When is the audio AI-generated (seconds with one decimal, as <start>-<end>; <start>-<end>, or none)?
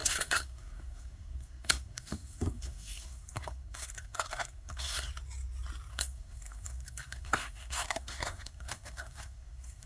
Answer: 0.0-5.1; 5.9-9.9